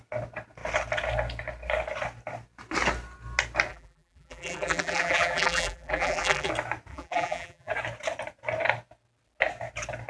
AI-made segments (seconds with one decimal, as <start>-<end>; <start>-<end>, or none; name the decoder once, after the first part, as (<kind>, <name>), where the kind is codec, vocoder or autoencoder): 3.7-6.5 (vocoder, BigVGAN v2); 6.9-7.7